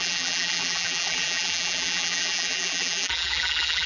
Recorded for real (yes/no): no